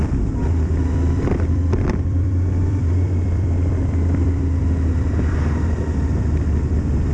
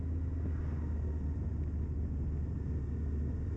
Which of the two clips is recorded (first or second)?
second